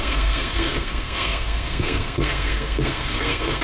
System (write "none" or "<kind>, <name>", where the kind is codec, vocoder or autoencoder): codec, SNAC